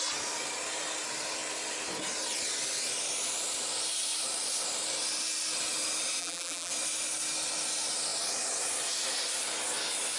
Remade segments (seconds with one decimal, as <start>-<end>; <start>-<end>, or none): 6.2-6.7